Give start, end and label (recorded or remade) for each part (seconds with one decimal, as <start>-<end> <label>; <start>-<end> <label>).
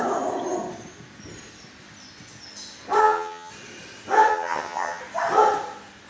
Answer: 0.0-3.0 recorded; 3.0-3.5 remade; 3.5-4.3 recorded; 4.3-5.0 remade; 5.0-6.1 recorded